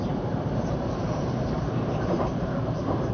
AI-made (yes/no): yes